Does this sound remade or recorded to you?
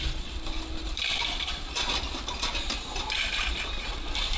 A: recorded